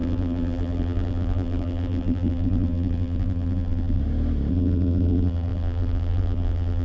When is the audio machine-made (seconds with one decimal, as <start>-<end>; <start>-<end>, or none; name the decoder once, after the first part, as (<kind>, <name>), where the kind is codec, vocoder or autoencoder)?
0.0-4.0 (vocoder, BigVGAN v2); 4.5-6.8